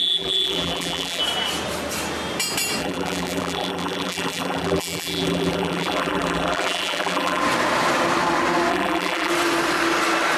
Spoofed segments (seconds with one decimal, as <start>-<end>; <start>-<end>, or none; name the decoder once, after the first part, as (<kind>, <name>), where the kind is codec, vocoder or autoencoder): 0.0-1.2 (vocoder, BigVGAN v2); 2.8-7.4; 8.7-9.3